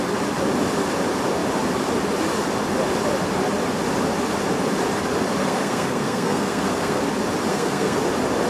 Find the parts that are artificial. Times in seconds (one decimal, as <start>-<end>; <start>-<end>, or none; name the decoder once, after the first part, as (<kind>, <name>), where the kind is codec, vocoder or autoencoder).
5.4-7.0 (codec, SNAC); 7.5-8.0